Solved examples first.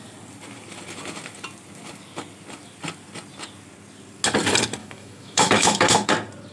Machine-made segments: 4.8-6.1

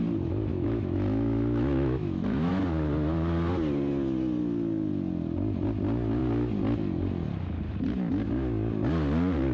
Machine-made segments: 0.5-2.5

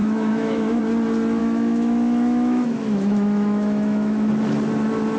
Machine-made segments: 0.0-0.8; 1.4-4.3

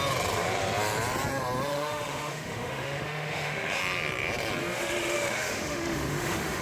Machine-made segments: 1.7-3.8; 4.6-6.6

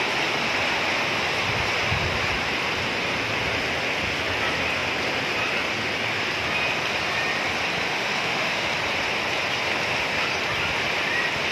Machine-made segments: 7.9-8.7

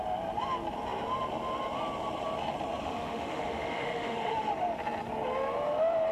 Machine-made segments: 2.8-4.5

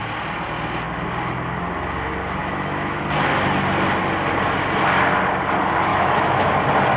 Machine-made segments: 2.4-3.0; 5.9-6.5